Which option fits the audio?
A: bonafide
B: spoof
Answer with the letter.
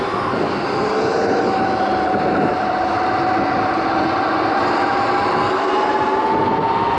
A